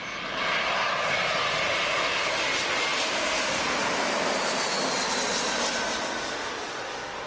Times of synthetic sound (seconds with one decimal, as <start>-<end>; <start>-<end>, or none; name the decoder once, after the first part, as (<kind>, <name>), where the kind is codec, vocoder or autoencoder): 2.9-4.2 (vocoder, BigVGAN v2)